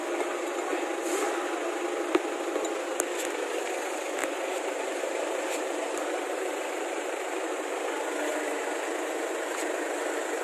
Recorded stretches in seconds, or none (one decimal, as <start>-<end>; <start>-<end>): 0.0-4.2; 7.7-10.4